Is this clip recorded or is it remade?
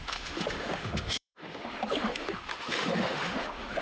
remade